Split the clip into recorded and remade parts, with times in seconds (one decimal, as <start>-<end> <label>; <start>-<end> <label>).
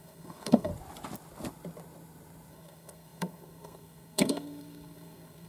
0.0-0.7 remade; 0.7-2.5 recorded; 2.5-5.5 remade